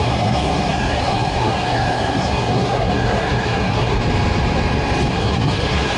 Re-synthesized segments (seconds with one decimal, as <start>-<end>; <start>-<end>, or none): 0.0-4.0; 5.1-6.0